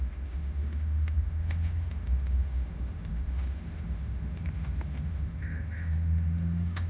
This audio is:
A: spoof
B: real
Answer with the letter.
A